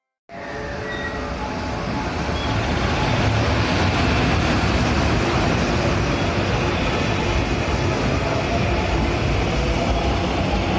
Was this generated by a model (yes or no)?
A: no